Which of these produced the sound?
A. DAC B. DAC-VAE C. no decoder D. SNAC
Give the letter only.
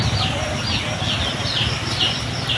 C